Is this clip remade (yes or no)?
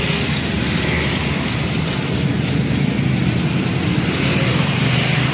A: no